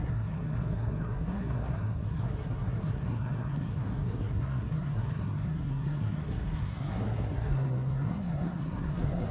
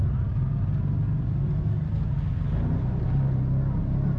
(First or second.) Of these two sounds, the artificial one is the first